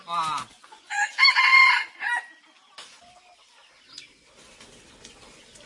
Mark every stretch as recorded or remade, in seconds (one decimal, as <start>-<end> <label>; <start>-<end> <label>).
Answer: 0.0-0.5 recorded; 0.5-1.1 remade; 1.1-5.7 recorded